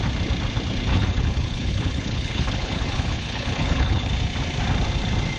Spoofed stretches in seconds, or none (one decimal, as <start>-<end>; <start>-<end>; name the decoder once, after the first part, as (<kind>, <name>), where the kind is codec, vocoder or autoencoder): 0.9-4.1 (codec, HILCodec)